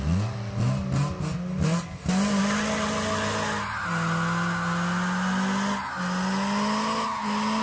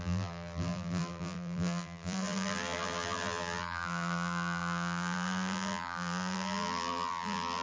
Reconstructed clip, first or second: second